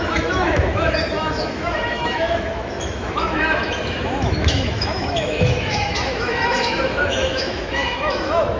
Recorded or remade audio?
remade